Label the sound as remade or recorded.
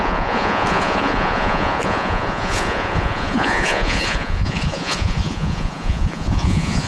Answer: remade